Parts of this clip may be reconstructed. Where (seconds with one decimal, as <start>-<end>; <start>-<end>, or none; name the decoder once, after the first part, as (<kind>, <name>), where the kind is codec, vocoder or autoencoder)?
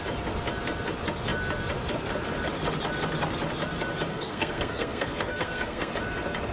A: 4.1-5.9 (codec, SNAC)